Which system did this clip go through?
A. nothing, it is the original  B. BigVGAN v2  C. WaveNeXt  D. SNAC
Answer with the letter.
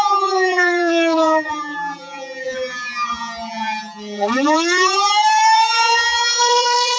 B